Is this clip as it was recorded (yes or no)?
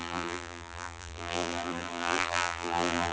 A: no